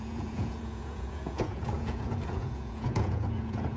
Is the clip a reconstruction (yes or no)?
yes